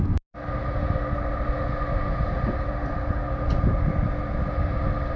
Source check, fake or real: real